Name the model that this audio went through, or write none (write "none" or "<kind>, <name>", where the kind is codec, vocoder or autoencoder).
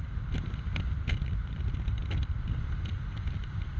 none